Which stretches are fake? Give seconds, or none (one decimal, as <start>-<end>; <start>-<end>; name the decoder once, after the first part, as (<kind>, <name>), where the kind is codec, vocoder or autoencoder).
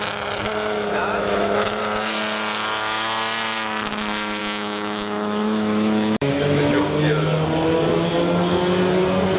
1.0-1.8 (autoencoder, DAC-VAE); 4.4-6.3